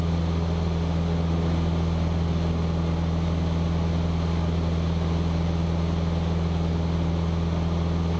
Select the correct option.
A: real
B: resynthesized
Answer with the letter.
A